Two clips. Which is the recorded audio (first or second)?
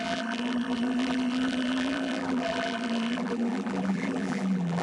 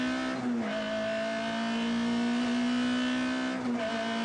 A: second